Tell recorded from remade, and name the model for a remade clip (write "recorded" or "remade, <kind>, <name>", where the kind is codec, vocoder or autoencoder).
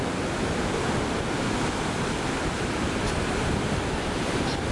remade, vocoder, BigVGAN v2